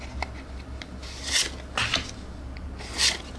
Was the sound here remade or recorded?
recorded